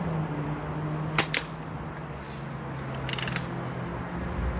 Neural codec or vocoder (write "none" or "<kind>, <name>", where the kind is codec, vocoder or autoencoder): none